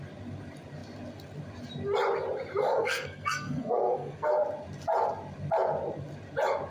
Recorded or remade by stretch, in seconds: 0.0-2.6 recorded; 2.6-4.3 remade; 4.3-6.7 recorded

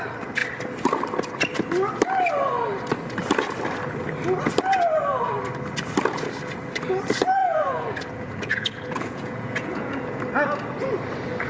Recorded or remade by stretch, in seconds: 0.0-7.4 recorded; 7.4-10.2 remade; 10.2-11.5 recorded

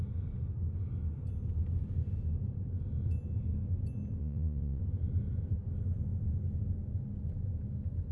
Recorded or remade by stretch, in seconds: 0.0-4.2 recorded; 4.2-4.8 remade; 4.8-8.1 recorded

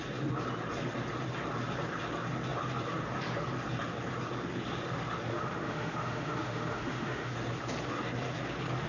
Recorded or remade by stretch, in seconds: 0.0-5.3 recorded; 5.3-7.3 remade; 7.3-8.9 recorded